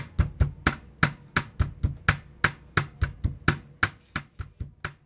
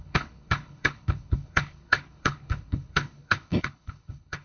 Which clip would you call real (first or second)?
first